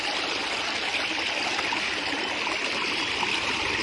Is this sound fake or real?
real